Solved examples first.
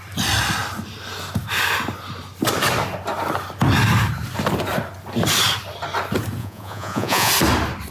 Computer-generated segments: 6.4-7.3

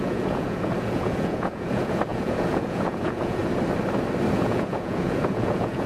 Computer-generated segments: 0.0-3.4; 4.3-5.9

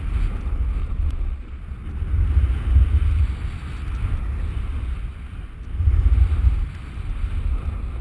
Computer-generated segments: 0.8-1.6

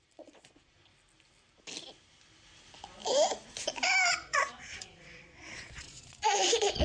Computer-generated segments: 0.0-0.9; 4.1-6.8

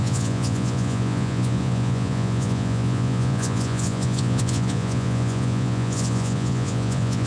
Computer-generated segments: 0.0-7.3

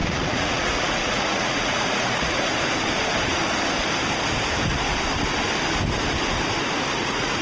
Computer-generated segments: 0.0-2.5; 6.9-7.4

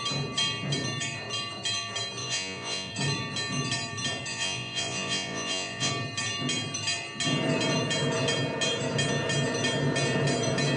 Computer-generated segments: 2.2-2.9; 4.3-5.9

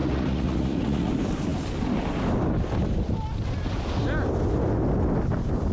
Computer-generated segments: 0.0-1.1